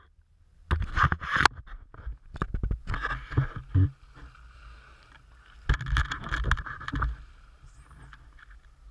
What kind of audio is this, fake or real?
real